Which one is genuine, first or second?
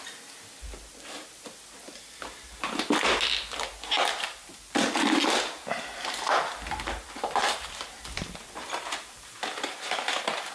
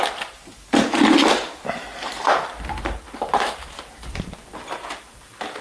first